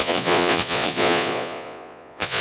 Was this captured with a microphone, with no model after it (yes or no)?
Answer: no